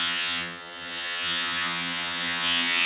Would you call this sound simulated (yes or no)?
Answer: yes